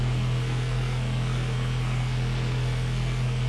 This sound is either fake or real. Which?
fake